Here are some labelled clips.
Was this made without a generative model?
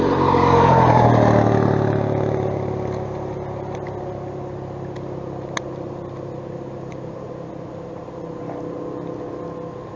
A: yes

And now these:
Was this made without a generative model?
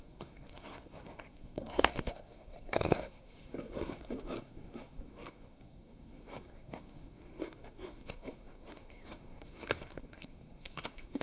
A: no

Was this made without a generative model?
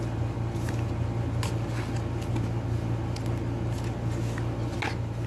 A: yes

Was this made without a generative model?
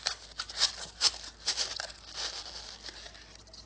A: yes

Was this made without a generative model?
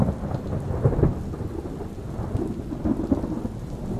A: yes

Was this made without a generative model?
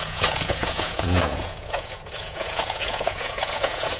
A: no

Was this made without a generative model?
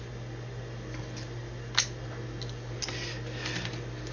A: yes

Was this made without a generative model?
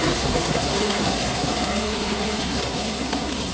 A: no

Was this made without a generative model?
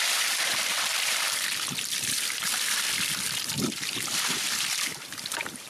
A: no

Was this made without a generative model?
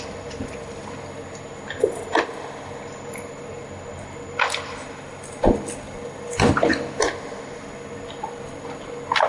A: yes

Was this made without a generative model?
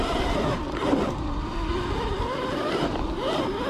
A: yes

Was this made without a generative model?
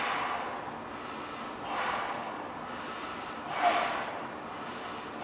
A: yes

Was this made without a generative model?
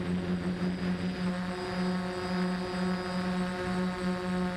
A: yes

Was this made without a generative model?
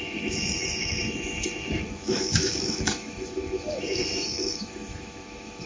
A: no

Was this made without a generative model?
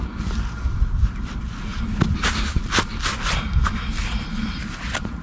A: yes